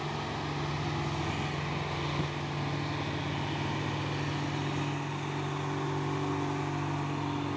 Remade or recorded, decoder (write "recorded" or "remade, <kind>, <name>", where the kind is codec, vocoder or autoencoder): recorded